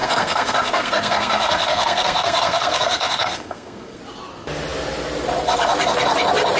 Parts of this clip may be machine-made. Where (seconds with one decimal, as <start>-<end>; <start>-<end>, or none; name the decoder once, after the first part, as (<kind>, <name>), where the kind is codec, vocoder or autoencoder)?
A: 0.0-4.0 (codec, SNAC)